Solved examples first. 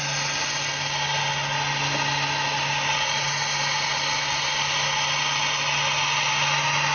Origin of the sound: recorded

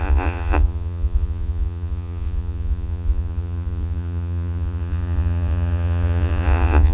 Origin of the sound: remade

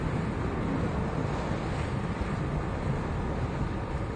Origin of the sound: recorded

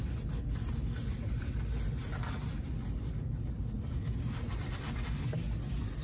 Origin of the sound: recorded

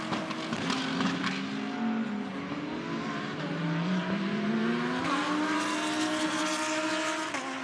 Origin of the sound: recorded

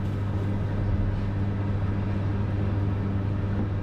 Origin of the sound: recorded